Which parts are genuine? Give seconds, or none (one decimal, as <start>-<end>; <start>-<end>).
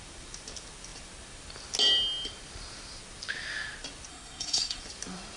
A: 0.0-4.1; 4.8-5.4